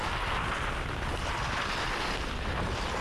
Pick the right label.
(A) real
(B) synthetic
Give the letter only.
A